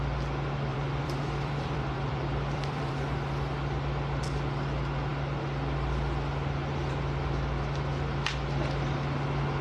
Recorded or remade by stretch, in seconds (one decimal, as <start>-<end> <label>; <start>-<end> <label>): 0.0-0.7 recorded; 0.7-2.9 remade; 2.9-9.6 recorded